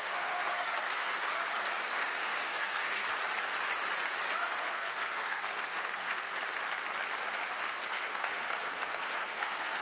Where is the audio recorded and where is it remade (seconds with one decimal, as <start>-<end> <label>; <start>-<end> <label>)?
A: 0.0-1.2 remade; 1.2-1.8 recorded; 1.8-3.0 remade; 3.0-4.4 recorded; 4.4-6.3 remade; 6.3-7.6 recorded; 7.6-9.8 remade